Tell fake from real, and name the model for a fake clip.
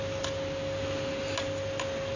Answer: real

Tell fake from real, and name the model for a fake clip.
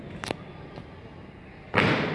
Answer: real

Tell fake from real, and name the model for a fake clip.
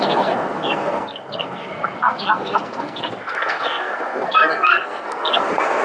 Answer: fake, codec, SNAC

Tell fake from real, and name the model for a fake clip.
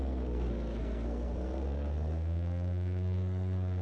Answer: fake, codec, SNAC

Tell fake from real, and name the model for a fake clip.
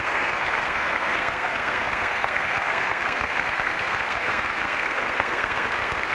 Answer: fake, codec, SNAC